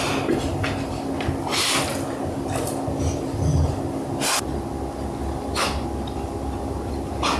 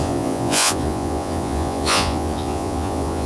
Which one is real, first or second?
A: first